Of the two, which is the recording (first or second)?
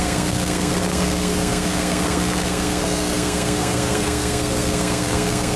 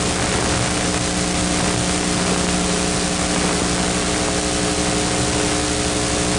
second